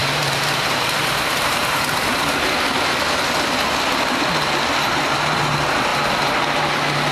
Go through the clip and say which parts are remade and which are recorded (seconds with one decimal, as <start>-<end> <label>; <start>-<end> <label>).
0.0-2.0 remade; 2.0-7.1 recorded